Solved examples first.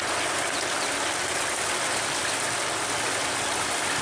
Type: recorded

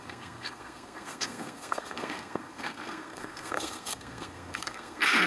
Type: remade